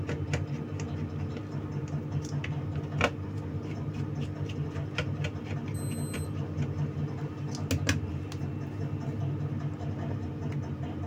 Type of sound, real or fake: real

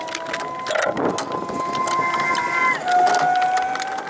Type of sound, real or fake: real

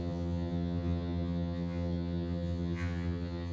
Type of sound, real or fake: fake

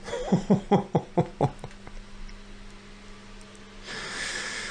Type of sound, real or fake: real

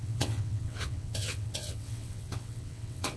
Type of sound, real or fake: fake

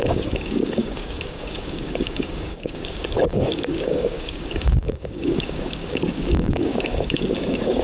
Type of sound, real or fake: fake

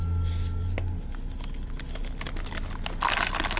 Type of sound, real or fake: real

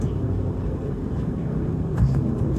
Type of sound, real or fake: fake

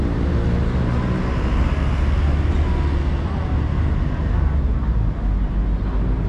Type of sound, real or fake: real